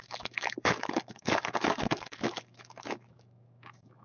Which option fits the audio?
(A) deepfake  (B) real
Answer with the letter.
A